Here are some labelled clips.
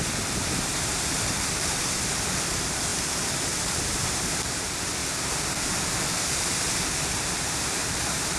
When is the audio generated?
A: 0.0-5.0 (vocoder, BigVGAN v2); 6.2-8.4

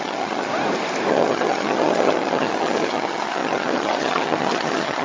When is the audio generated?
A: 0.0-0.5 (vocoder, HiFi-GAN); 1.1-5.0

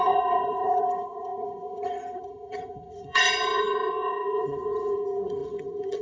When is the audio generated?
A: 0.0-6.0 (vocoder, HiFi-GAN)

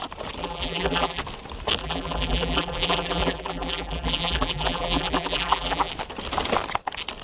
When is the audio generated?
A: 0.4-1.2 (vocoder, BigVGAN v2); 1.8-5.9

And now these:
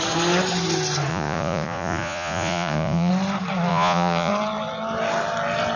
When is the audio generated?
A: 1.1-3.1 (vocoder, Vocos); 3.7-4.3

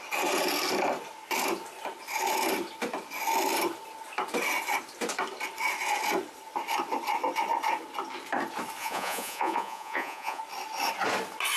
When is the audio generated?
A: 8.8-10.4 (vocoder, Vocos)

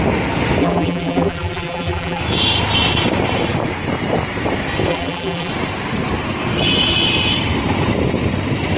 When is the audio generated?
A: 0.6-2.2 (vocoder, BigVGAN v2); 4.9-5.5